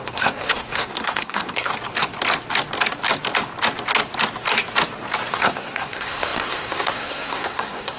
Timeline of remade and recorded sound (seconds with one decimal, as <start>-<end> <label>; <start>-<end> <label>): 0.0-1.7 remade; 1.7-5.3 recorded; 5.3-8.0 remade